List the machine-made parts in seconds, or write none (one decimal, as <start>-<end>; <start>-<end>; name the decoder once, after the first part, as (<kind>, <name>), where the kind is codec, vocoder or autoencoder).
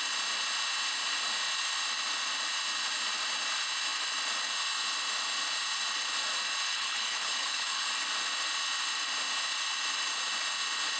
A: 6.7-7.9 (codec, HILCodec)